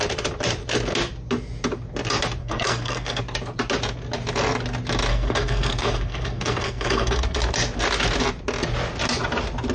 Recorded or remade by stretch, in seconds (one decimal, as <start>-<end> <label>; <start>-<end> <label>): 0.0-2.4 recorded; 2.4-3.2 remade; 3.2-5.1 recorded; 5.1-7.4 remade; 7.4-9.7 recorded